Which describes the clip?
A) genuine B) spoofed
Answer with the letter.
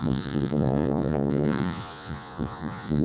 B